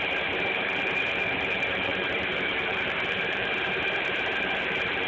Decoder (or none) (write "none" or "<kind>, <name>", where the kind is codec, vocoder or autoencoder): vocoder, BigVGAN v2